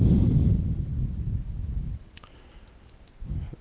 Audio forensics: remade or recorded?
recorded